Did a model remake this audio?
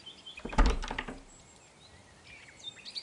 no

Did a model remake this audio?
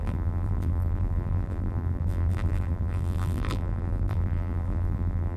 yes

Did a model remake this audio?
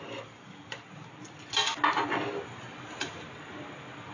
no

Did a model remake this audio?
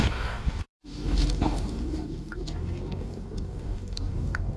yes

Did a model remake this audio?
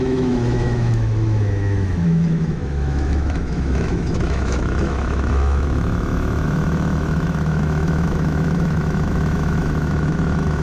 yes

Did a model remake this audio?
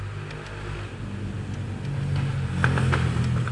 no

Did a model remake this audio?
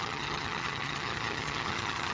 yes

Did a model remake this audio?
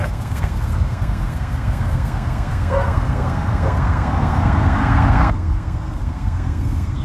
yes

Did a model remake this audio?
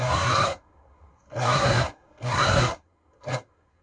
yes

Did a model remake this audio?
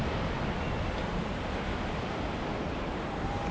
no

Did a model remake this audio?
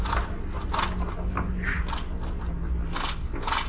no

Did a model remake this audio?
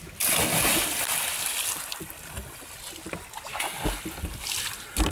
no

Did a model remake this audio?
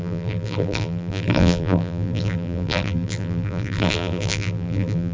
yes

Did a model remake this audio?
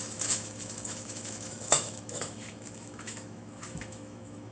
yes